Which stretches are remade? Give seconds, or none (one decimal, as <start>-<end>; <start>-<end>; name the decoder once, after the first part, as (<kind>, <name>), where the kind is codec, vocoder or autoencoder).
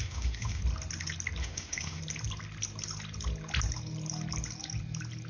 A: 0.0-0.6 (autoencoder, DAC-VAE); 1.4-2.0